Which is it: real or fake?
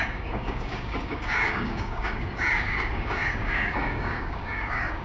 fake